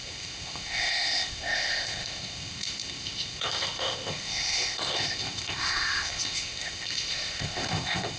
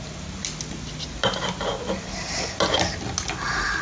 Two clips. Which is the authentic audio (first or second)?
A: second